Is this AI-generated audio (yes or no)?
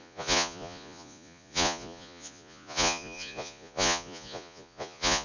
yes